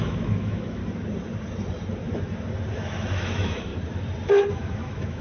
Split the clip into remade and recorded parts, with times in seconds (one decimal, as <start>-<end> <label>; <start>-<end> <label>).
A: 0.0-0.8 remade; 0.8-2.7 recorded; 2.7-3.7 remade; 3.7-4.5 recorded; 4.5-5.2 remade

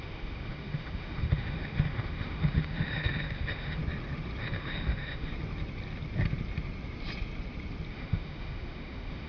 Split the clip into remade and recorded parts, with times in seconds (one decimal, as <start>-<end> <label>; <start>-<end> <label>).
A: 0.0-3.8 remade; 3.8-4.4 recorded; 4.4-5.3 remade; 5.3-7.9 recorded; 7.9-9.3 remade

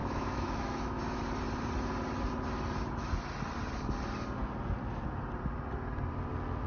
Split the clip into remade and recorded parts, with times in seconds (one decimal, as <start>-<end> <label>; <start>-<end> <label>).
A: 0.0-1.2 remade; 1.2-6.7 recorded

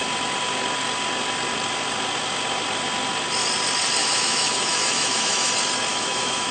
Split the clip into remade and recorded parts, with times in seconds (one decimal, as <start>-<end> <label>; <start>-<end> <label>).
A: 0.0-4.0 recorded; 4.0-5.5 remade; 5.5-5.9 recorded; 5.9-6.5 remade

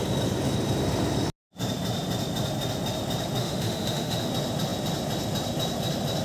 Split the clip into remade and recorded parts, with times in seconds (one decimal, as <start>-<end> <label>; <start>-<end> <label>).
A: 0.0-3.4 recorded; 3.4-4.3 remade; 4.3-6.2 recorded

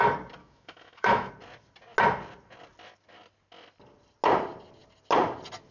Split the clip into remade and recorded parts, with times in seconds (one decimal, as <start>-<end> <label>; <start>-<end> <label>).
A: 0.0-0.4 recorded; 0.4-1.3 remade; 1.3-5.7 recorded